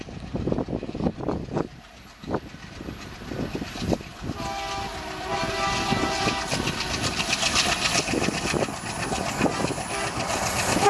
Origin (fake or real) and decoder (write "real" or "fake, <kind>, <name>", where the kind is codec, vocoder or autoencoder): real